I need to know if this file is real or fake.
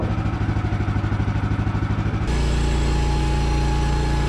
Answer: real